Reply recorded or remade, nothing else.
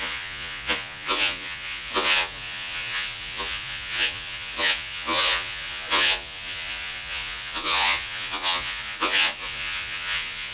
remade